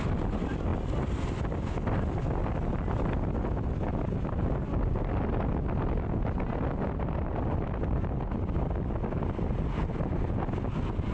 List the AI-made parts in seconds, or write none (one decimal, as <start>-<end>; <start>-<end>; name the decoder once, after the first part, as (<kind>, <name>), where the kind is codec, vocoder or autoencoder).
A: none